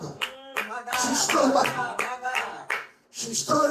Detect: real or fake fake